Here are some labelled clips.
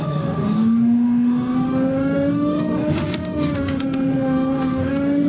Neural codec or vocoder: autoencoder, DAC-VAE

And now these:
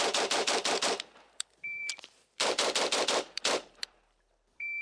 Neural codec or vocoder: vocoder, BigVGAN v2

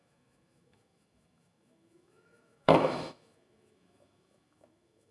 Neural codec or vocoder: autoencoder, DAC-VAE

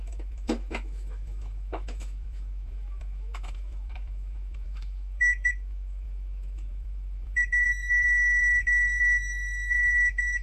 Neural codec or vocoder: autoencoder, DAC-VAE